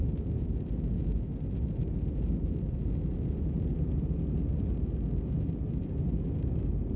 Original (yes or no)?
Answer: yes